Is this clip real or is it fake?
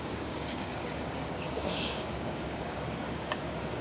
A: fake